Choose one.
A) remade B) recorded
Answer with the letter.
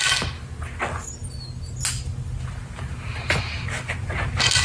B